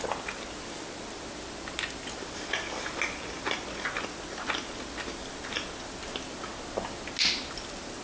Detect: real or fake real